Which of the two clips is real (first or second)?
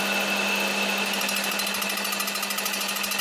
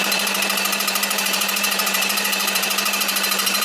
first